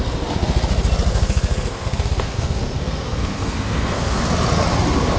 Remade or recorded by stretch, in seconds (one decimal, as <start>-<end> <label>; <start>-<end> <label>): 0.0-1.1 recorded; 1.1-4.2 remade; 4.2-5.2 recorded

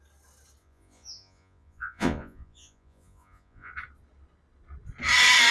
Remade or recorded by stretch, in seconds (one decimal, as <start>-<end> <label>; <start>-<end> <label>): 0.0-0.6 recorded; 0.6-3.7 remade; 3.7-5.5 recorded

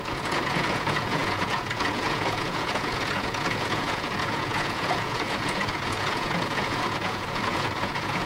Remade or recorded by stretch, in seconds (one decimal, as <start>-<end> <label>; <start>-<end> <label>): 0.0-8.3 remade

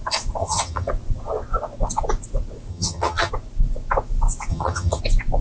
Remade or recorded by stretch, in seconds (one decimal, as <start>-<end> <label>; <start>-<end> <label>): 0.0-0.4 recorded; 0.4-0.9 remade; 0.9-2.7 recorded; 2.7-3.3 remade; 3.3-4.5 recorded; 4.5-5.0 remade; 5.0-5.4 recorded